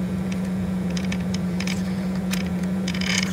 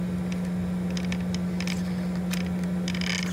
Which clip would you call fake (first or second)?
first